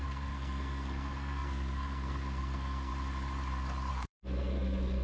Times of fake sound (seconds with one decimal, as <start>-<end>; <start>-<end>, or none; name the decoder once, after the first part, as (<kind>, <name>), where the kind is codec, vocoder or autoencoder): 0.0-2.9 (codec, SNAC); 3.9-5.0